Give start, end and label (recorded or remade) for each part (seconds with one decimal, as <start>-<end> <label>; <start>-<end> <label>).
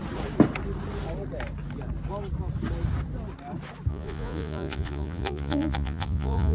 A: 0.0-3.9 recorded; 3.9-6.5 remade